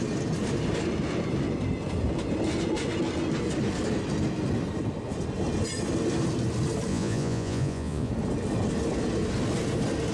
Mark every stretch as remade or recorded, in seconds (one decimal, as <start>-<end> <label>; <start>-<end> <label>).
0.0-6.9 recorded; 6.9-8.1 remade; 8.1-10.1 recorded